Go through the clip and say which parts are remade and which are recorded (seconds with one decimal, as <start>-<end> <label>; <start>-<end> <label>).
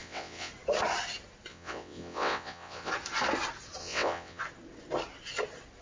0.0-0.5 remade; 0.5-1.5 recorded; 1.5-2.9 remade; 2.9-3.8 recorded; 3.8-4.4 remade; 4.4-5.8 recorded